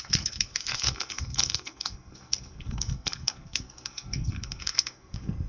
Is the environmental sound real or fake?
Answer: fake